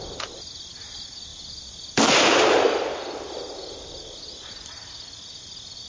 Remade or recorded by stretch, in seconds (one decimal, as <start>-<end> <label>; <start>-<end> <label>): 0.0-5.9 recorded